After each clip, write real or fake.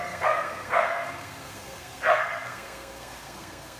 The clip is fake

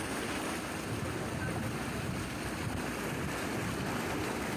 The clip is real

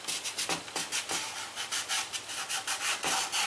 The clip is real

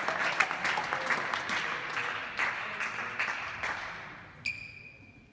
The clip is real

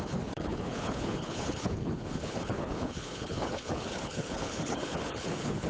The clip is fake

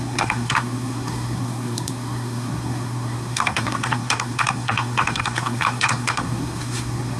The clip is fake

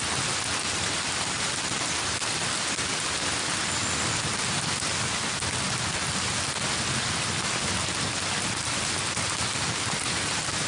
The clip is real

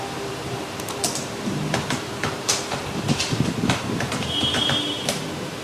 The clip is fake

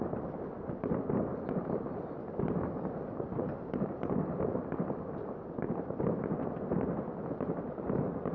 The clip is real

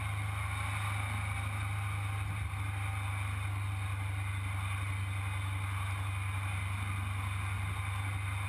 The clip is real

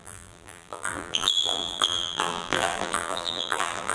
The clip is fake